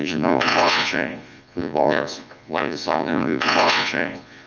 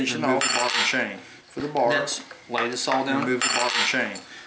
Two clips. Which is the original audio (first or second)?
second